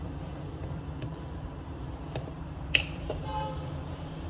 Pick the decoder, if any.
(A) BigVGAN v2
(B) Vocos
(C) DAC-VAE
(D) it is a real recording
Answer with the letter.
A